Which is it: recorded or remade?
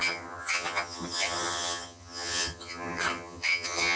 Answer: remade